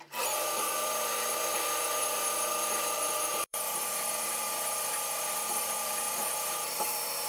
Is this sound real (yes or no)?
no